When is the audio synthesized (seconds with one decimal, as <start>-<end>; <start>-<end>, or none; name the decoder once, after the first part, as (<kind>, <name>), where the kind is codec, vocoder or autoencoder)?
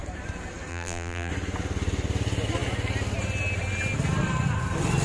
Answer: 0.7-1.3 (vocoder, BigVGAN v2)